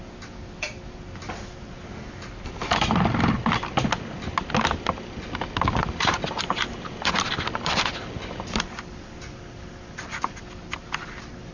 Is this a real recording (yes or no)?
yes